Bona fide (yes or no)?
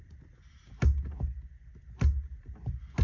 yes